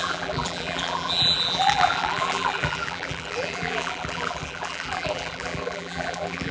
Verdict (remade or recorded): remade